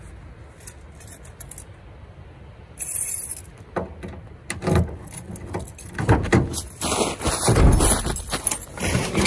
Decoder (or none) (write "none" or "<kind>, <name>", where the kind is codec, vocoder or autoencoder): none